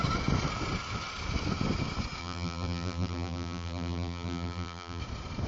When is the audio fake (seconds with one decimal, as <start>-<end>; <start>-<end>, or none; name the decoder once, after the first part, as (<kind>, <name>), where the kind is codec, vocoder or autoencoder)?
2.2-5.0 (vocoder, BigVGAN v2)